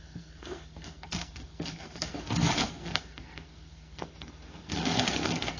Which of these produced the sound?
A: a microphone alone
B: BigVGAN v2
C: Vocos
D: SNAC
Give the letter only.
D